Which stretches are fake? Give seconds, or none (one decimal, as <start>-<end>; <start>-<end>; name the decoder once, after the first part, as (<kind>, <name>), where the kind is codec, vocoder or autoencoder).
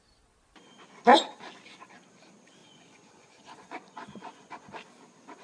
2.6-4.7 (vocoder, Vocos)